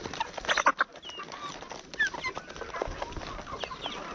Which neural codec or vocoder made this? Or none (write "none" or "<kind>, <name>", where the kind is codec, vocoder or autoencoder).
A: none